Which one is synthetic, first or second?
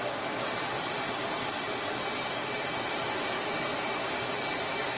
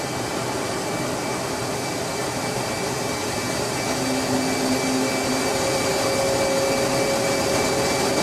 first